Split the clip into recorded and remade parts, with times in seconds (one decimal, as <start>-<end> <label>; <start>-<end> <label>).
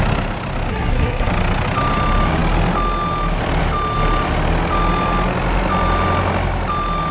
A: 0.0-0.7 recorded; 0.7-1.3 remade; 1.3-7.1 recorded